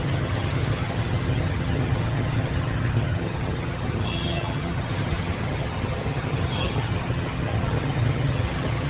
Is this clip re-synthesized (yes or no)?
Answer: yes